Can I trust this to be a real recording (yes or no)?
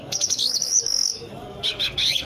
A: no